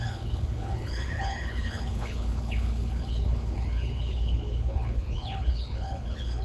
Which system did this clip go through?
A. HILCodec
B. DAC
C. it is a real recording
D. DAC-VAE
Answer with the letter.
A